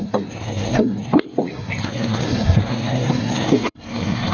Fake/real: fake